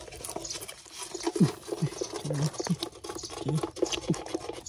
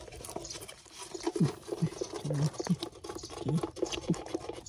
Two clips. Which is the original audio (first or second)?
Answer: first